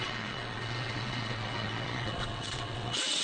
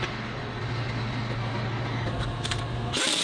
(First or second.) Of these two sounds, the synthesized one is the first